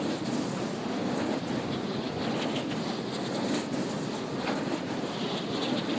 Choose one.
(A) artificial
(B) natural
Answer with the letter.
B